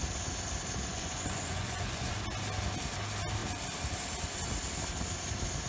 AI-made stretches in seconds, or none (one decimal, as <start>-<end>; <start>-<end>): 0.9-2.1